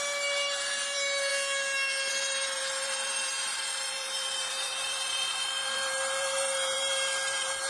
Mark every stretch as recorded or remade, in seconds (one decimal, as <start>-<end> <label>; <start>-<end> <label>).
0.0-1.3 remade; 1.3-2.1 recorded; 2.1-7.7 remade